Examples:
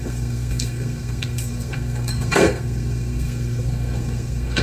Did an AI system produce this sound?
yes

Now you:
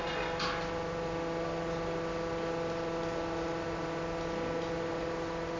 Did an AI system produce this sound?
no